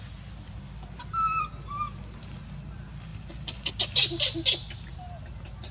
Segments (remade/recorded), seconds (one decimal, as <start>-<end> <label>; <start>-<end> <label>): 0.0-3.1 recorded; 3.1-3.7 remade; 3.7-5.7 recorded